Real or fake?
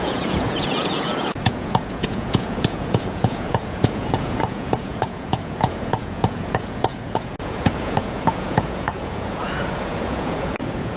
fake